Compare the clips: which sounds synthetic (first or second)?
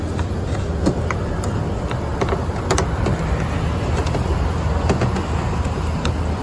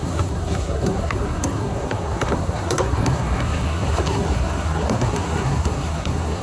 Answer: second